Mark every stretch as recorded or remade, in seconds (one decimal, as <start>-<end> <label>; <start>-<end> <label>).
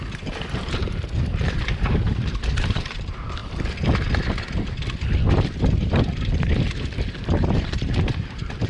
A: 0.0-3.4 remade; 3.4-5.3 recorded; 5.3-8.7 remade